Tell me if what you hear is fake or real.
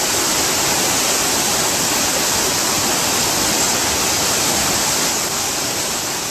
real